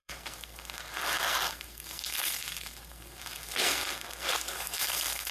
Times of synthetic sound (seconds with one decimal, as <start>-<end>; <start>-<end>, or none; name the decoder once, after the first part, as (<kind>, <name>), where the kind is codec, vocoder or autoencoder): 0.0-5.3 (codec, SNAC)